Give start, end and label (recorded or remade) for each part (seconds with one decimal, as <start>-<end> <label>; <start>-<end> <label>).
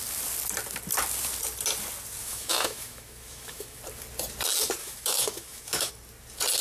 0.0-2.2 recorded; 2.2-3.8 remade; 3.8-4.8 recorded; 4.8-5.9 remade; 5.9-6.6 recorded